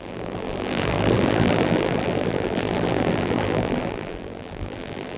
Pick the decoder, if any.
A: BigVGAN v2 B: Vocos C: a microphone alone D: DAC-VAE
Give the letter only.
A